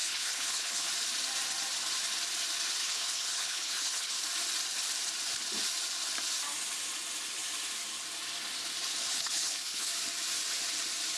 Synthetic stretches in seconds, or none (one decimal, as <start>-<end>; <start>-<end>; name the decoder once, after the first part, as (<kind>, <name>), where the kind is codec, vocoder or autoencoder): 0.0-0.9 (codec, HILCodec); 2.8-4.2; 9.1-9.9